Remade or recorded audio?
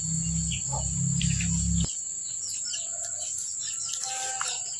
recorded